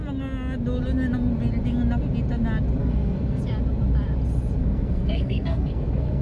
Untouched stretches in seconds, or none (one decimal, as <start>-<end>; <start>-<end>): 0.0-2.8; 3.4-4.6